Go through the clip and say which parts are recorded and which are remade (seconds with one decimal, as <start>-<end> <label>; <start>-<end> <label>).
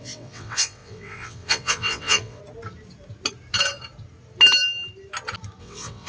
0.0-2.4 remade; 2.4-5.6 recorded; 5.6-6.1 remade